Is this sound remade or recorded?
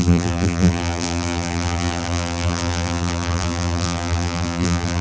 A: remade